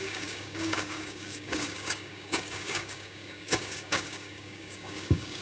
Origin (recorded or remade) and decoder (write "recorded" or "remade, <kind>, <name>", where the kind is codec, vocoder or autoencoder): remade, codec, DAC